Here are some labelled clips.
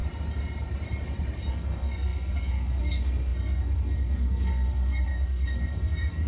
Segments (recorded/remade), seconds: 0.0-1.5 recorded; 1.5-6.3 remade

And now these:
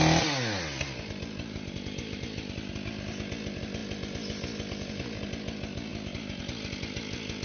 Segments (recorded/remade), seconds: 0.0-7.4 recorded